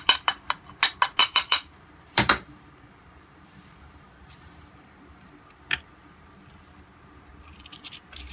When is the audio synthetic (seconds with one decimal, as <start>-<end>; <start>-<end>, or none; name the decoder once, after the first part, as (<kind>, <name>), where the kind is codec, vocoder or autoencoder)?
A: 1.2-5.3 (vocoder, BigVGAN v2)